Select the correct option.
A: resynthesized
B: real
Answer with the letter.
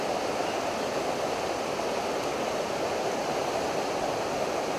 B